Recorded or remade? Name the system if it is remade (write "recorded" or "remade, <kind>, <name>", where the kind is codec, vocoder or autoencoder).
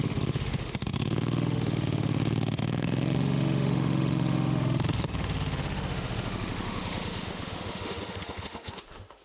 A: remade, autoencoder, DAC-VAE